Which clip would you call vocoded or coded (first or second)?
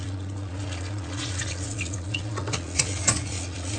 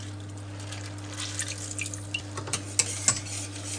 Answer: first